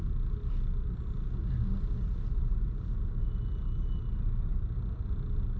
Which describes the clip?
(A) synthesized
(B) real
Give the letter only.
B